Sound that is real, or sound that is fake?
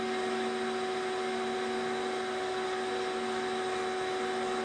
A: real